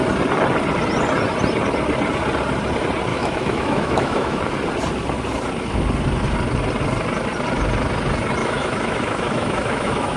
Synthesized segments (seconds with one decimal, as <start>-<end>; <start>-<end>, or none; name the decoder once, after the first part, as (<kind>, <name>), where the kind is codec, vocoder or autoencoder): 3.1-4.4 (autoencoder, DAC-VAE); 8.4-10.2